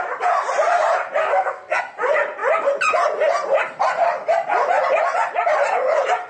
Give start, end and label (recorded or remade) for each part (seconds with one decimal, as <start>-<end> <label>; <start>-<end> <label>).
0.0-1.2 recorded; 1.2-1.8 remade; 1.8-6.3 recorded